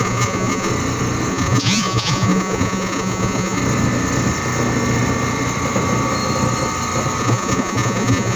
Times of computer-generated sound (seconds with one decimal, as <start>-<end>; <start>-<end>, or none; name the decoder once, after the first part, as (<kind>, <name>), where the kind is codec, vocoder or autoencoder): 0.0-0.7 (vocoder, Vocos); 1.3-3.6; 7.2-8.4